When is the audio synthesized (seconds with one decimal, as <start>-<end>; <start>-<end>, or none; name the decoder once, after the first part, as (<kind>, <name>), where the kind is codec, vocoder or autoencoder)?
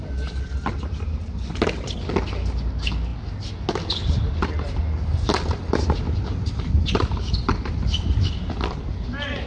none